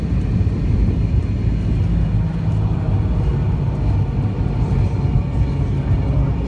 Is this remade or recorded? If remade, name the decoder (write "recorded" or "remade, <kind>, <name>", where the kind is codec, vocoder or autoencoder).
recorded